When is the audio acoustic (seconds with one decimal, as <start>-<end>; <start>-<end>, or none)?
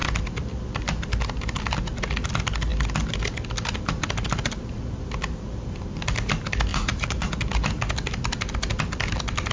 0.0-6.7; 7.3-9.5